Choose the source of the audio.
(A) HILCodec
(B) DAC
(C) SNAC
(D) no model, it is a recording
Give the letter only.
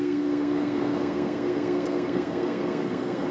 C